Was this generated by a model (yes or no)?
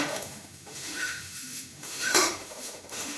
yes